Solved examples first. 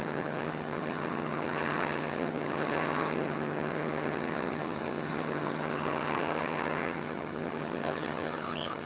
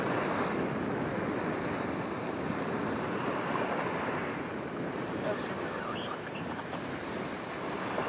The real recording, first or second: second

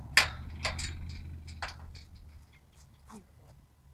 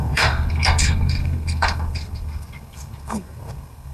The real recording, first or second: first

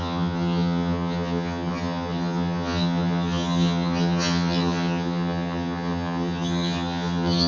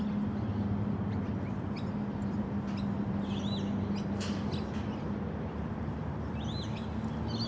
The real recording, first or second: second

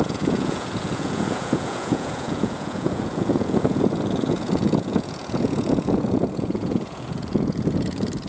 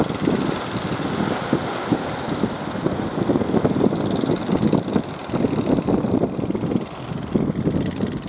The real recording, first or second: second